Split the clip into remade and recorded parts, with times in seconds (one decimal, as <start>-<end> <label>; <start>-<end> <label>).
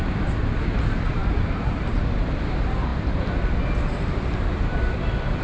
0.0-1.2 recorded; 1.2-2.4 remade; 2.4-5.4 recorded